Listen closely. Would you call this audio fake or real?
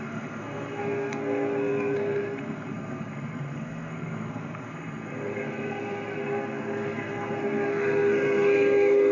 fake